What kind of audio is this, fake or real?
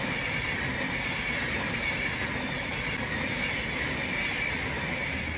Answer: real